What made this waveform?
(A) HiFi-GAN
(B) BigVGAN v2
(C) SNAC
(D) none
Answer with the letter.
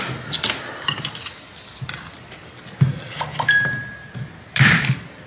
D